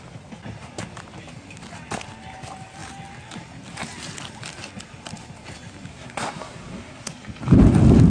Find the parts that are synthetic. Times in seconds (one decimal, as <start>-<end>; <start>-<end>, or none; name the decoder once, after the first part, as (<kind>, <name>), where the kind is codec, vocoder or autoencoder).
5.9-7.1 (codec, SNAC)